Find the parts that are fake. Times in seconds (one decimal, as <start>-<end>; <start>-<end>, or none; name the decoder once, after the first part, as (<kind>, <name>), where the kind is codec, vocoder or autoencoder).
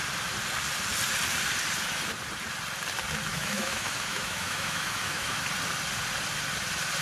3.3-5.4 (autoencoder, DAC-VAE)